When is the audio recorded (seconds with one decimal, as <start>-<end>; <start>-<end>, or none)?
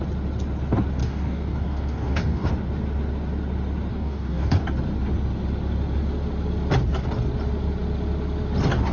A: 0.0-1.0; 2.5-3.9; 4.5-8.9